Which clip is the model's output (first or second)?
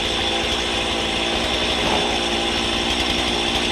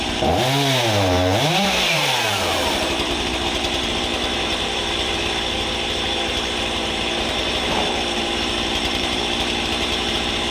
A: second